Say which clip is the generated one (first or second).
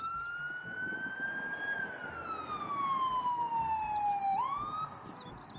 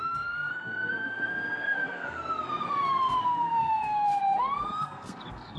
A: second